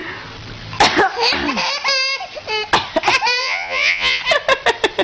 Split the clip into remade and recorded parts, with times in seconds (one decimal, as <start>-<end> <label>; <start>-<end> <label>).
0.0-3.4 recorded; 3.4-4.2 remade; 4.2-5.0 recorded